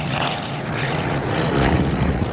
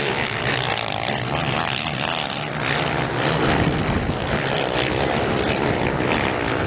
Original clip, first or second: second